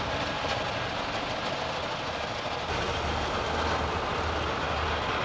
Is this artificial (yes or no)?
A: no